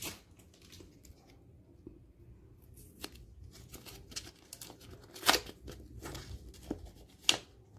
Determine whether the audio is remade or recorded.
recorded